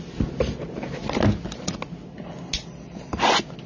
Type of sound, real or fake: real